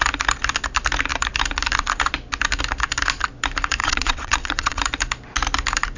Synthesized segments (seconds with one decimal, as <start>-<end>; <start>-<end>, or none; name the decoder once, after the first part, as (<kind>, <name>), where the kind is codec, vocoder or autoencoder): 3.8-4.8 (vocoder, WaveNeXt)